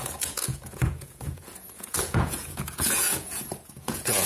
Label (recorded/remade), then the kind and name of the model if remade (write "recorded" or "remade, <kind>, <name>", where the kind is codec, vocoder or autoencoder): remade, vocoder, Vocos